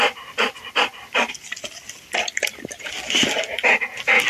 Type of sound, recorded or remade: recorded